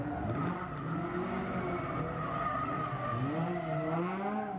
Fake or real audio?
real